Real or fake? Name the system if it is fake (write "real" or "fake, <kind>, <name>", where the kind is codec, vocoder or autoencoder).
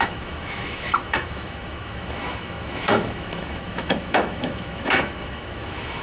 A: fake, autoencoder, DAC-VAE